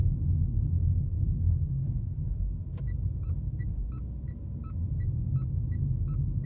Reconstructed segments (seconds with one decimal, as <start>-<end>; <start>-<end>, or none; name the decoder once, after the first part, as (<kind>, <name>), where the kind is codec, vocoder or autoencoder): none